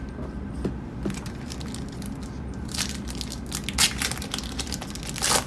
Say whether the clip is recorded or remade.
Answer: recorded